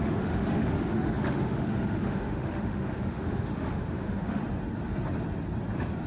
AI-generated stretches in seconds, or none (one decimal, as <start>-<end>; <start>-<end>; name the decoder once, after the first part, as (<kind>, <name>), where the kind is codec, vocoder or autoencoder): 0.0-4.4 (autoencoder, DAC-VAE)